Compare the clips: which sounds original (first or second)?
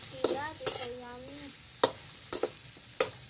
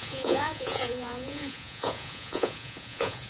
first